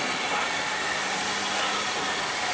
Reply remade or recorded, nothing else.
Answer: recorded